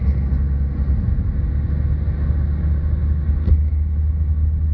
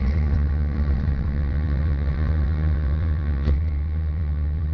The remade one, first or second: second